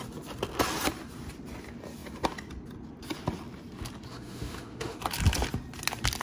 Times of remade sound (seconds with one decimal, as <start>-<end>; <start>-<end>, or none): 4.1-5.0